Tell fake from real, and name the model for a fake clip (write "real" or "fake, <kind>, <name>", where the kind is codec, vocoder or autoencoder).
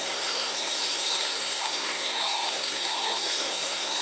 fake, codec, SNAC